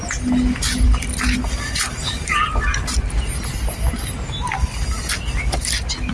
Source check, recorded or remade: recorded